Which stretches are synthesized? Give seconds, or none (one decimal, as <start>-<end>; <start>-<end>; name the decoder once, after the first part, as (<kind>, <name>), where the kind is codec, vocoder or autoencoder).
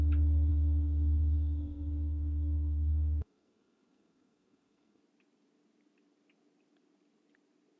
0.5-5.0 (codec, SNAC)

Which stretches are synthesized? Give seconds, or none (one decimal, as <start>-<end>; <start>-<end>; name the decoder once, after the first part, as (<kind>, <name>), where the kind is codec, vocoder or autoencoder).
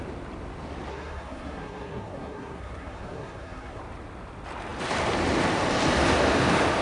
0.9-3.8 (codec, SNAC)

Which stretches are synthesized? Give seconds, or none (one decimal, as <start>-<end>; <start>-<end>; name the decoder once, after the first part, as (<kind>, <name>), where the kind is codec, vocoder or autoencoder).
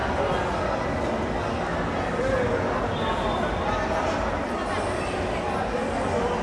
none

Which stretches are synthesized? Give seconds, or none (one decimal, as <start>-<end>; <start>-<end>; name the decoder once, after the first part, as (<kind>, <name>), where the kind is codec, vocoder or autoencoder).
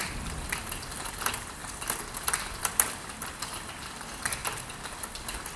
none